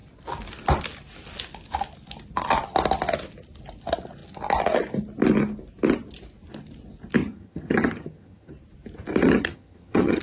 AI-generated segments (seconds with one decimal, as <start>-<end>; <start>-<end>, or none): 7.2-8.5; 9.2-10.2